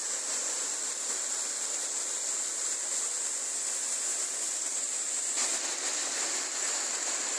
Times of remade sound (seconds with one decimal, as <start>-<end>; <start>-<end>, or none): none